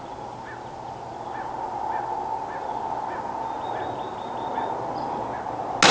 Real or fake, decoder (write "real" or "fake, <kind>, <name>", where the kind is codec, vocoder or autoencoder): real